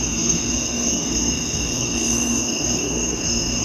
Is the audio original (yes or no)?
no